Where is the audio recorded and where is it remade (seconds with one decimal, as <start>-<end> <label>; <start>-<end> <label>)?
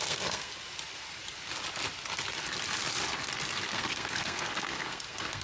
0.0-0.5 remade; 0.5-3.7 recorded; 3.7-5.4 remade